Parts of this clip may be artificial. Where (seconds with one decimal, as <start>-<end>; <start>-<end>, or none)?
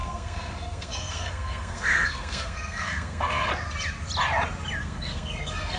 0.0-3.5; 4.8-5.8